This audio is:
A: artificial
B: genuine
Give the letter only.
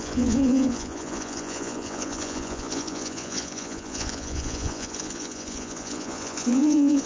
A